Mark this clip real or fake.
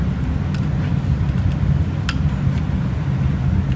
real